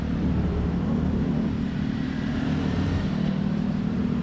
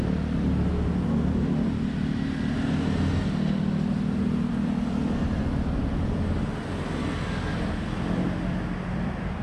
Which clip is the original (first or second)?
second